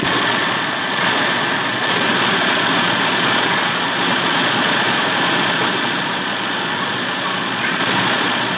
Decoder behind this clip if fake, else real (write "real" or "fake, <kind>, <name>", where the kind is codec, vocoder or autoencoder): fake, vocoder, Vocos